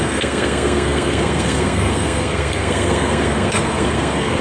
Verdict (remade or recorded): remade